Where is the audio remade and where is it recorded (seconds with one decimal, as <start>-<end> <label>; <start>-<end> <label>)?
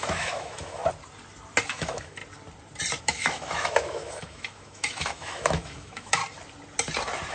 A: 0.0-0.8 remade; 0.8-1.7 recorded; 1.7-2.2 remade; 2.2-3.0 recorded; 3.0-6.2 remade; 6.2-7.3 recorded